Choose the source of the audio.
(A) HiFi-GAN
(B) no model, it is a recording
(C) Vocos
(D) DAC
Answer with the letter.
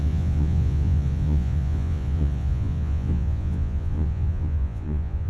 C